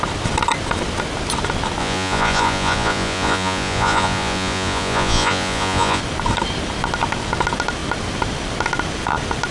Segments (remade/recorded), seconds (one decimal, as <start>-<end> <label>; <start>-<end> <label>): 0.0-1.8 recorded; 1.8-6.0 remade; 6.0-9.5 recorded

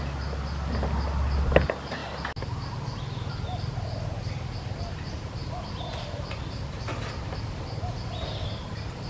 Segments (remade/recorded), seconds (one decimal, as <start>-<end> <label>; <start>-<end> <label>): 0.0-9.1 recorded